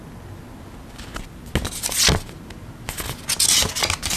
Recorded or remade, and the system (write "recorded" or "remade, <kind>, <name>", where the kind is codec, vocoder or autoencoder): recorded